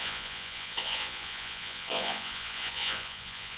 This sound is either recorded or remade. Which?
remade